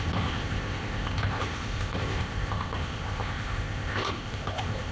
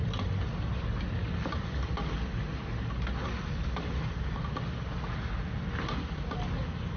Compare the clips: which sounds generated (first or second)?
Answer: first